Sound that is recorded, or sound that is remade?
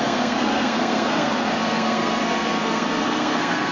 remade